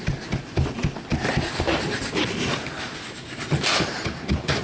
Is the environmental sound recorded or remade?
recorded